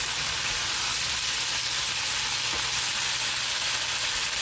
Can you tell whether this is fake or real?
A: real